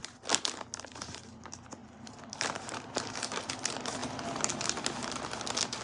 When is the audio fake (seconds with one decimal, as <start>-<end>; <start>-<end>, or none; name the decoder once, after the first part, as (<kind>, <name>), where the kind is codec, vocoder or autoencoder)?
1.8-3.5 (vocoder, BigVGAN v2)